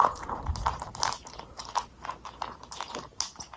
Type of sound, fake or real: fake